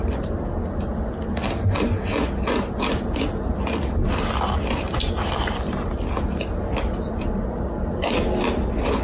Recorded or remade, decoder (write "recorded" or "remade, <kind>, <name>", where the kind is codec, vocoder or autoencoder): recorded